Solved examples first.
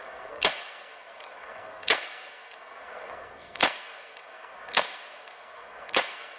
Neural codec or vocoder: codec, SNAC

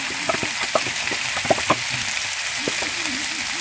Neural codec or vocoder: none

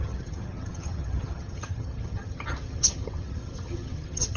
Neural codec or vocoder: vocoder, HiFi-GAN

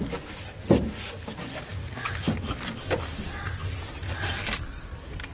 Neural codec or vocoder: none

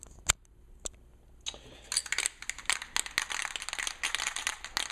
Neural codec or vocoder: none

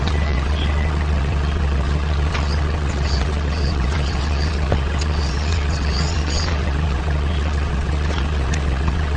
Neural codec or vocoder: vocoder, WaveNeXt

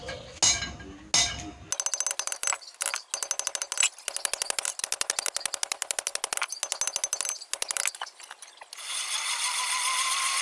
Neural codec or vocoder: none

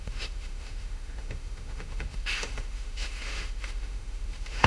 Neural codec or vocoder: autoencoder, DAC-VAE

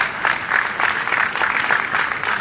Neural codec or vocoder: none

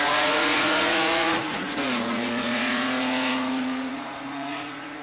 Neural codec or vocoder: vocoder, Vocos